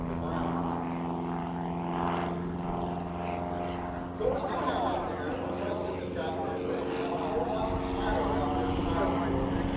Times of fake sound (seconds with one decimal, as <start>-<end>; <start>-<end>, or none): none